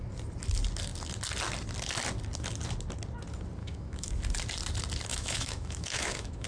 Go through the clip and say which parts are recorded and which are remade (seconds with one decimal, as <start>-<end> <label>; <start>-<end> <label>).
0.0-3.6 recorded; 3.6-4.1 remade; 4.1-5.1 recorded; 5.1-6.5 remade